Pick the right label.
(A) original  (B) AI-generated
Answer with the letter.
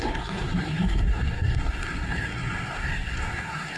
B